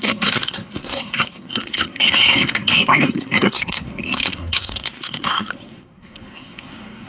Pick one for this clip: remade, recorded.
remade